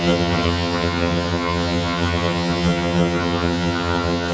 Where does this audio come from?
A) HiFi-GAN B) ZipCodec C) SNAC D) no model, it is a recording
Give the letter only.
A